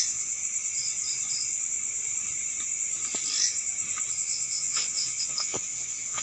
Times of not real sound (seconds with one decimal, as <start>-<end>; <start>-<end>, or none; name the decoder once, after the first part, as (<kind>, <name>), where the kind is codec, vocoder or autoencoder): 0.0-0.4 (vocoder, WaveNeXt); 4.1-6.2